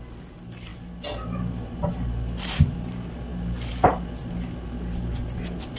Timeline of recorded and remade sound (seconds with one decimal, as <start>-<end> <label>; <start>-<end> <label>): 0.0-5.8 recorded